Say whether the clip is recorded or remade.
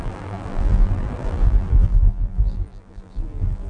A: remade